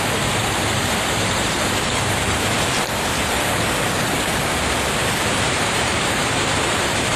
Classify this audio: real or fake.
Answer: fake